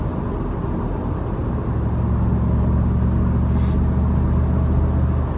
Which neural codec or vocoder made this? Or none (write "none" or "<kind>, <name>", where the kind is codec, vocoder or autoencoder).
none